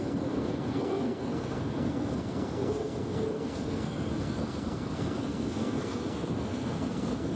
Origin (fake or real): fake